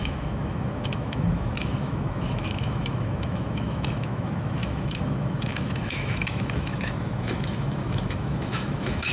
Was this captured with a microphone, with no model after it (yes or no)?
no